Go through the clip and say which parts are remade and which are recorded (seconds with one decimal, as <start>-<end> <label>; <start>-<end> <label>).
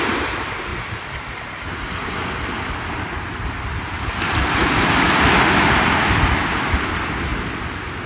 0.0-0.7 remade; 0.7-4.5 recorded; 4.5-8.1 remade